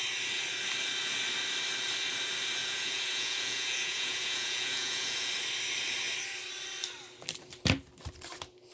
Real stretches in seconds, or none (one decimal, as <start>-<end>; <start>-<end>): 0.0-2.6; 5.3-8.7